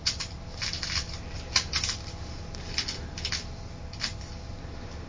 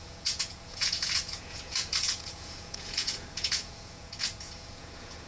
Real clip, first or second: first